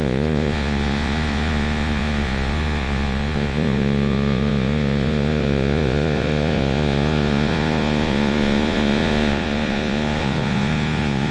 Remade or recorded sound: remade